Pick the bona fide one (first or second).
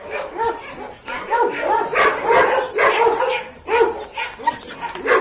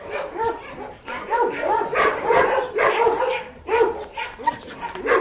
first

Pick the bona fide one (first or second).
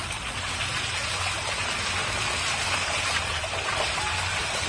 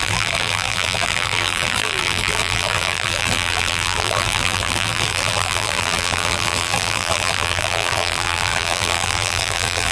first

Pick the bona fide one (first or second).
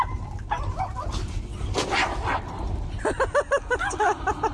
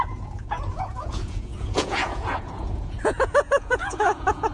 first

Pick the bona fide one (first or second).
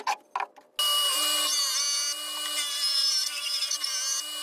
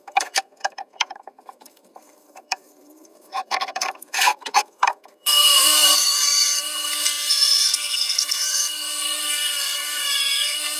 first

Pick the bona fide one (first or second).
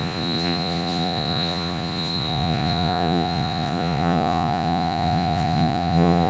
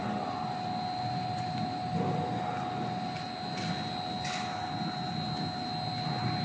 second